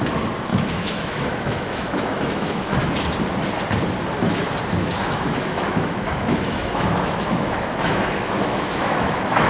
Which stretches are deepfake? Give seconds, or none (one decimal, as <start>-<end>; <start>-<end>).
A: 0.5-2.9; 4.8-9.5